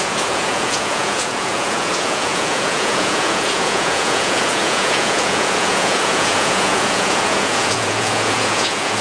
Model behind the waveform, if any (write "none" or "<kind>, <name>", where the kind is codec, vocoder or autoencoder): vocoder, Vocos